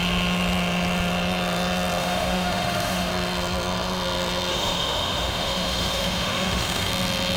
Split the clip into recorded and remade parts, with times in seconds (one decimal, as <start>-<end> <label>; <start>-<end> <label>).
0.0-2.0 recorded; 2.0-3.1 remade; 3.1-4.5 recorded; 4.5-6.9 remade; 6.9-7.4 recorded